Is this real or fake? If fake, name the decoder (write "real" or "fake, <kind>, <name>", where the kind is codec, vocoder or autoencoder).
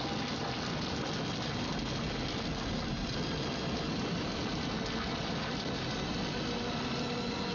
real